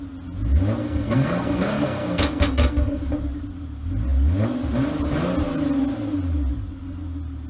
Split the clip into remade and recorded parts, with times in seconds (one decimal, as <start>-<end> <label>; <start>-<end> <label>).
0.0-0.8 recorded; 0.8-3.0 remade; 3.0-7.5 recorded